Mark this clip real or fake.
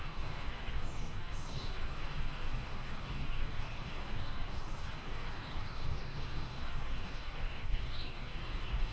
fake